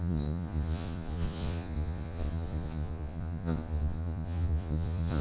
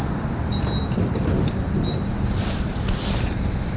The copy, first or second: first